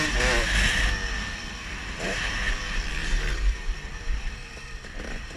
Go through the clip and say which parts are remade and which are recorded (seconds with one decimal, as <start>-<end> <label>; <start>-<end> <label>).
0.0-1.8 recorded; 1.8-2.3 remade; 2.3-3.0 recorded; 3.0-5.4 remade